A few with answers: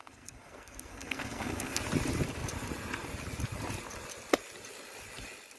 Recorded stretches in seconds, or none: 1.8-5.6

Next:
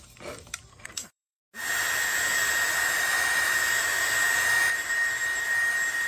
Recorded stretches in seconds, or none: 0.0-0.7; 1.4-6.1

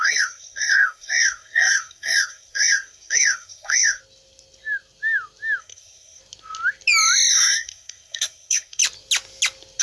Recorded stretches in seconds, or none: 4.0-5.6; 6.2-7.3; 8.8-9.8